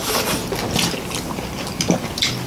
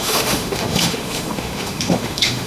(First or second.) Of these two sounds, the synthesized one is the second